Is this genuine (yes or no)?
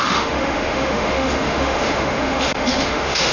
no